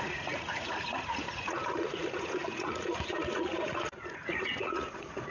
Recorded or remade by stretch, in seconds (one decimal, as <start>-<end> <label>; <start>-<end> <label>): 0.0-5.3 remade